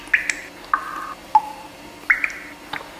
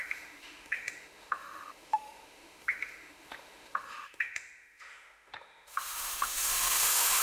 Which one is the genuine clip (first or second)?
first